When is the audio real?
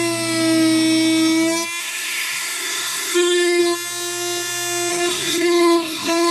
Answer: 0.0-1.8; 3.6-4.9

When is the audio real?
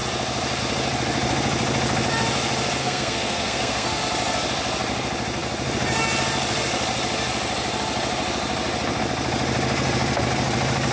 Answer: 0.0-2.8; 4.0-10.9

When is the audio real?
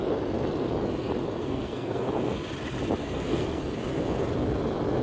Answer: 0.0-1.4; 2.1-3.0; 3.6-5.0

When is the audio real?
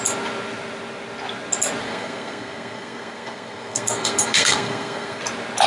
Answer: 0.0-1.8; 5.2-5.7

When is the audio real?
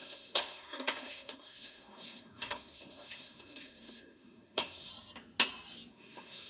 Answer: 4.9-5.9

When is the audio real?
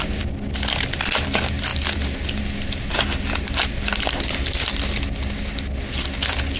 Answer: 0.0-6.6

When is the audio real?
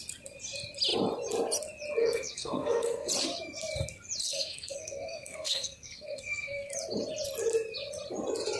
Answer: 0.0-2.0; 3.1-4.2; 6.7-8.6